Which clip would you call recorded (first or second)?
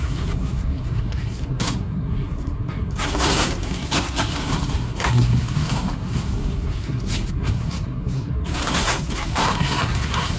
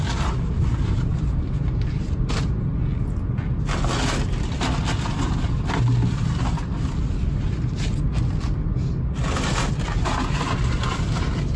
second